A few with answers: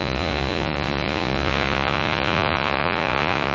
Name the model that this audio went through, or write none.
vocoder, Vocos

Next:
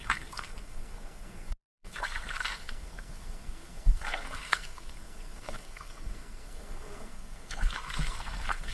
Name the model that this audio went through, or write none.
codec, SNAC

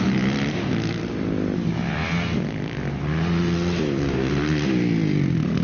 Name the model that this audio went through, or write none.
none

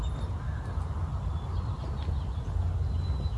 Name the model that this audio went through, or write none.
none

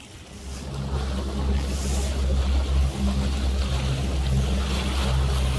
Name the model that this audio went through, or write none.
none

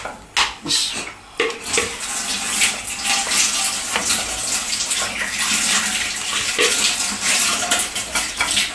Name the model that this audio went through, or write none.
none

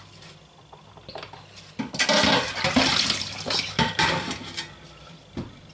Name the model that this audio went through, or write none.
none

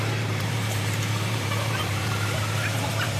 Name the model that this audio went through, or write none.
vocoder, BigVGAN v2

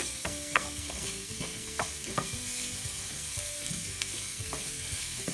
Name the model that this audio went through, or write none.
codec, SNAC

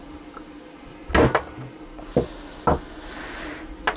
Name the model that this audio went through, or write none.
none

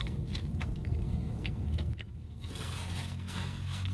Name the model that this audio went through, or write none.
codec, SNAC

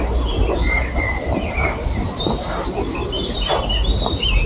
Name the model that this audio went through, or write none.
vocoder, BigVGAN v2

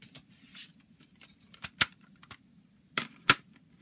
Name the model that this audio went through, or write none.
none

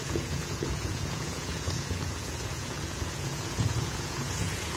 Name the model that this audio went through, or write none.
vocoder, Vocos